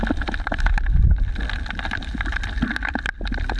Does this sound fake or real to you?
real